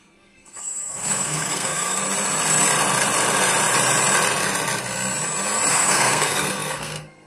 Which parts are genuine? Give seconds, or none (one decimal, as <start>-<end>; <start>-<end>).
2.0-5.7